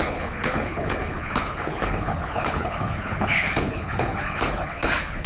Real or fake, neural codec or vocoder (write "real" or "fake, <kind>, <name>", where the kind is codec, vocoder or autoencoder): fake, codec, HILCodec